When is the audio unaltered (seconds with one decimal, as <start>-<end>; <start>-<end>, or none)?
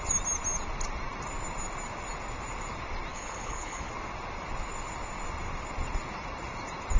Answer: 0.0-3.1; 3.9-7.0